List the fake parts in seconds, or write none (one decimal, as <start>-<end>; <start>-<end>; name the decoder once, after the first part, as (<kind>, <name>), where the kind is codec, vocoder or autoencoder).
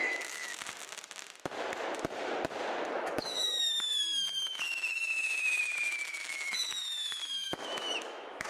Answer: 0.0-0.5 (autoencoder, DAC-VAE); 2.9-8.5